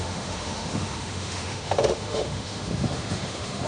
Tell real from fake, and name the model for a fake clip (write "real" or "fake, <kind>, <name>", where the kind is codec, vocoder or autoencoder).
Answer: fake, autoencoder, DAC-VAE